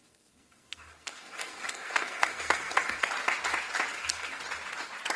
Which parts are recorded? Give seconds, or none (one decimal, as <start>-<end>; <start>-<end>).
3.1-3.9; 4.4-5.2